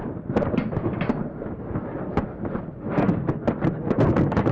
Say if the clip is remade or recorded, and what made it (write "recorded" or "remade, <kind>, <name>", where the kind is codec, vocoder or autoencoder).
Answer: recorded